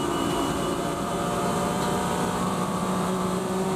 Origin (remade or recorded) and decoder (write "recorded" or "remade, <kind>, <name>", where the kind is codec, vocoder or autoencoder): remade, vocoder, BigVGAN v2